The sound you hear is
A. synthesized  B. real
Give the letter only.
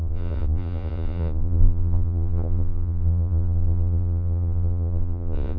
A